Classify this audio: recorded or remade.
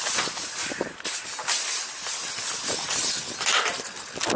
recorded